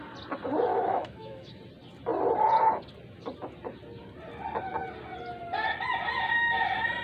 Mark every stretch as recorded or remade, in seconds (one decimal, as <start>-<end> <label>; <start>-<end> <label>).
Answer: 0.0-0.7 recorded; 0.7-1.5 remade; 1.5-7.0 recorded